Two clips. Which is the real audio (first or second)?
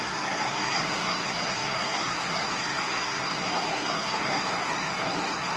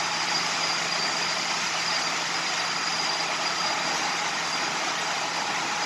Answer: second